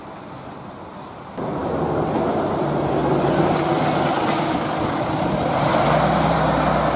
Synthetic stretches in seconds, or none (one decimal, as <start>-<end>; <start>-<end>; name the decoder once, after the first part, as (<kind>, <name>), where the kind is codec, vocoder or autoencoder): none